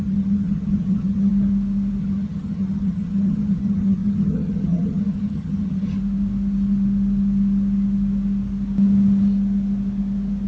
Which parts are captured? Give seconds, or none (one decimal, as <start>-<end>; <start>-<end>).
1.3-2.0; 6.0-10.5